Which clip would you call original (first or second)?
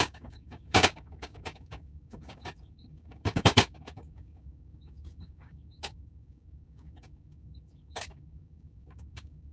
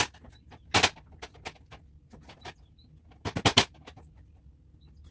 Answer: second